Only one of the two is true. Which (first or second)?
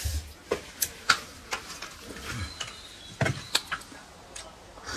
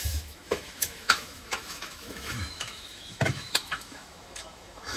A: first